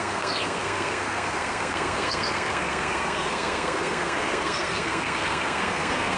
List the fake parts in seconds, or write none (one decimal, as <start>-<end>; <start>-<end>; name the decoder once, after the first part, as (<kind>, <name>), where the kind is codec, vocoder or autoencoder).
0.0-6.2 (codec, SNAC)